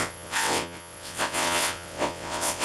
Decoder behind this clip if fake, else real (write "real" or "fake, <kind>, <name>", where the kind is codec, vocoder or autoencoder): fake, vocoder, WaveNeXt